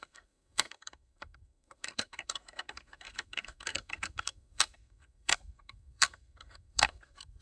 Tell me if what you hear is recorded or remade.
remade